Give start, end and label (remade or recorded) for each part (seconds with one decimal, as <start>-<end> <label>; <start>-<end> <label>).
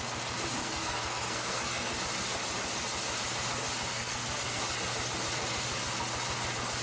0.0-0.6 recorded; 0.6-2.0 remade; 2.0-3.9 recorded; 3.9-4.6 remade; 4.6-6.8 recorded